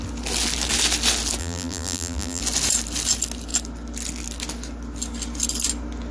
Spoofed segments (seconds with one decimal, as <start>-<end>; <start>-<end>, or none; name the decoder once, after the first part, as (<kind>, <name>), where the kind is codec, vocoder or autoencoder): 1.4-2.4 (vocoder, BigVGAN v2)